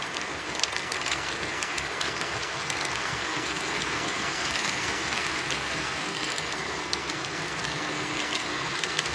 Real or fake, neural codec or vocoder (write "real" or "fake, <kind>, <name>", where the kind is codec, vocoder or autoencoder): fake, codec, SNAC